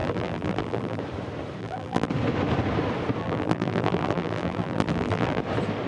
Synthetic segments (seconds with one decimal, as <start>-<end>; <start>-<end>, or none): 0.0-1.0; 1.6-2.1; 3.2-5.4